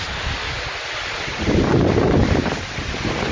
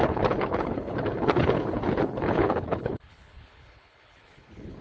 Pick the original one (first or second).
first